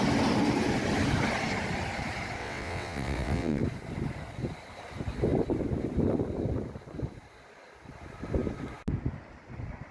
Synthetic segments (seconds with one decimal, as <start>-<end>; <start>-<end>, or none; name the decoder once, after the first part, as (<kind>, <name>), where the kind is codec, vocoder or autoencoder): 2.4-3.6 (vocoder, WaveNeXt)